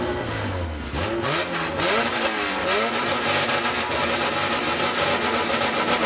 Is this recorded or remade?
recorded